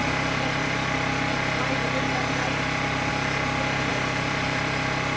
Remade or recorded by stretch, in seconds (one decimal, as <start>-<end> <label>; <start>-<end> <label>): 0.0-3.1 remade; 3.1-3.9 recorded; 3.9-5.2 remade

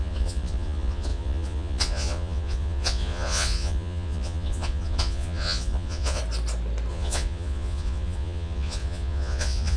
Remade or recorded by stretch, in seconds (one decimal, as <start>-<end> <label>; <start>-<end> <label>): 0.0-6.2 remade; 6.2-6.9 recorded; 6.9-9.8 remade

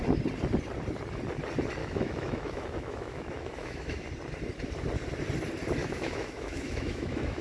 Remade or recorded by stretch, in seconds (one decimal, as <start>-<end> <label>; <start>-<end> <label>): 0.0-1.8 recorded; 1.8-4.0 remade; 4.0-5.8 recorded; 5.8-7.4 remade

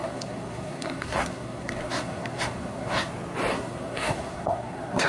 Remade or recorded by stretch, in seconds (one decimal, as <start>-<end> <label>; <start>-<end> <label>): 0.0-3.1 remade; 3.1-3.5 recorded; 3.5-5.1 remade

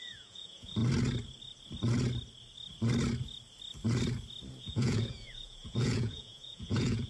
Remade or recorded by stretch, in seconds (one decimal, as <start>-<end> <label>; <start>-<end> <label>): 0.0-0.8 remade; 0.8-4.6 recorded; 4.6-7.1 remade